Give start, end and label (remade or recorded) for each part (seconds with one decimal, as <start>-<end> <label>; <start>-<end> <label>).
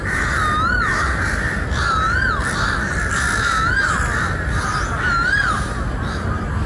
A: 0.0-6.7 recorded